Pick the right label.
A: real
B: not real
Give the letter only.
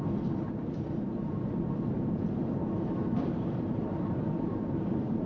B